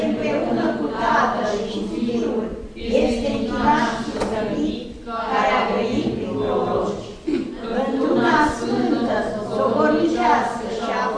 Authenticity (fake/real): real